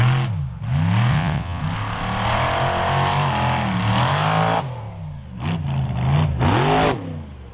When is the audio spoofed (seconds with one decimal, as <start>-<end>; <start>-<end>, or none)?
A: 1.1-1.6